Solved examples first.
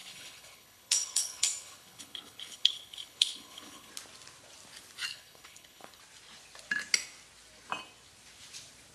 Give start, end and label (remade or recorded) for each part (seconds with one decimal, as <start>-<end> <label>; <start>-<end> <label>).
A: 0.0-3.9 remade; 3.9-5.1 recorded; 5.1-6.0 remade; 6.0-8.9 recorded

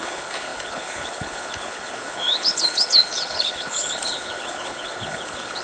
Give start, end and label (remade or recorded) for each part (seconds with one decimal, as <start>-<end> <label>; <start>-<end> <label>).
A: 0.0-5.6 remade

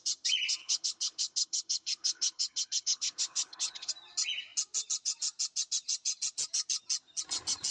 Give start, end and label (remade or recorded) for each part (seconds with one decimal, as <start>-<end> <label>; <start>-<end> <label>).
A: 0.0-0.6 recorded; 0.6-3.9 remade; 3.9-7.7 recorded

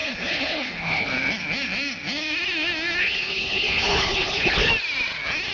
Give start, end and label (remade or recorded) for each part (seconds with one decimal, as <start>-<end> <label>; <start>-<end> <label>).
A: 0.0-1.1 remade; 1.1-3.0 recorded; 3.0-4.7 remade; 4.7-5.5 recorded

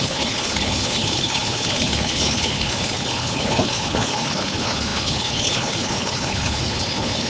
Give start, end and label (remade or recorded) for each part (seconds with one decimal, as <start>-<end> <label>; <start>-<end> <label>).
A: 0.0-7.3 remade

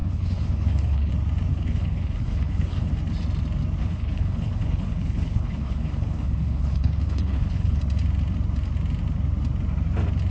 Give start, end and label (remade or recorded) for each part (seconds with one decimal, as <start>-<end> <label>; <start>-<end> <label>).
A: 0.0-1.1 remade; 1.1-1.5 recorded; 1.5-2.9 remade; 2.9-3.8 recorded; 3.8-7.8 remade; 7.8-10.3 recorded

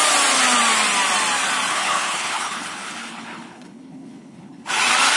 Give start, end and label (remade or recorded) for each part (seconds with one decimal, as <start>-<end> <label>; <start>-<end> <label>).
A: 0.0-1.7 recorded; 1.7-4.7 remade; 4.7-5.2 recorded